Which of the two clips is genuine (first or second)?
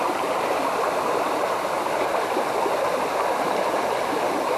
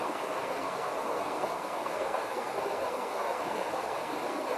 first